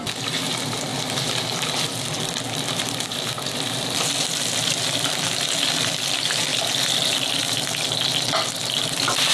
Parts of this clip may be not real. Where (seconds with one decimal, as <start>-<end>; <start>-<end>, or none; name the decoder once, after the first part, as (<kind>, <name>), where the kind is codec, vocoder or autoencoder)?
none